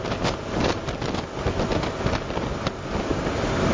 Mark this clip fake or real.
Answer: real